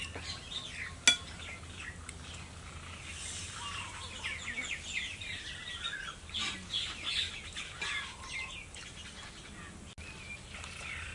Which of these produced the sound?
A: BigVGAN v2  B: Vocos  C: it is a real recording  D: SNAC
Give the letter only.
C